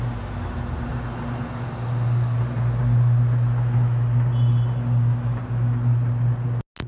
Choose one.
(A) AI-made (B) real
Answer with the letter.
B